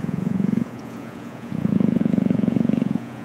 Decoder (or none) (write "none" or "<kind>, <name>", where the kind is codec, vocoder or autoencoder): vocoder, Vocos